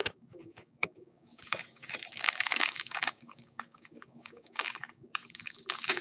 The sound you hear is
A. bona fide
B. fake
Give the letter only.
B